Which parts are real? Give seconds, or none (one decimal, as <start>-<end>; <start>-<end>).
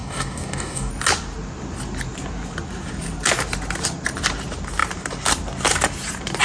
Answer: 0.9-6.4